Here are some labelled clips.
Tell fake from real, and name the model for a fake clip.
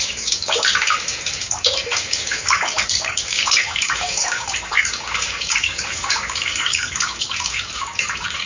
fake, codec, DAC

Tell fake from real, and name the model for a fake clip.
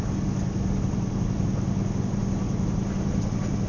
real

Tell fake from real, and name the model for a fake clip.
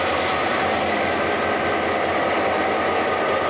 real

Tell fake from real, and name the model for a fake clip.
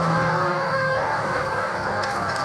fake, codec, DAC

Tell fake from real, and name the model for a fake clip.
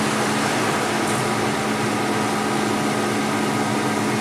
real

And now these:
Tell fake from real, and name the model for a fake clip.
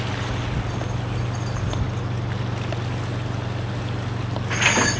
real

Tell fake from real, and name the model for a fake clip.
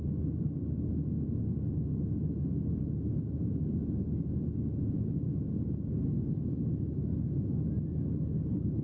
real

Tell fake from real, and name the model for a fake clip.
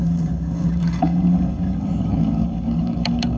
fake, codec, DAC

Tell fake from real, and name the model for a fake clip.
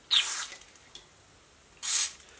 real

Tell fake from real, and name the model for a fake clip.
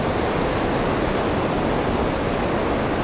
real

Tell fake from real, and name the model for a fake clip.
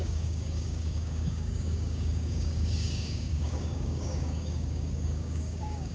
fake, codec, DAC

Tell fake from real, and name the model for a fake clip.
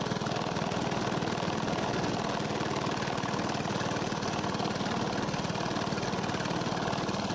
real